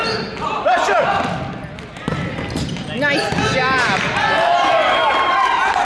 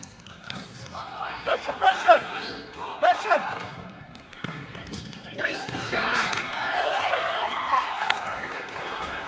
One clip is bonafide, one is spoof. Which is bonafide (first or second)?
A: first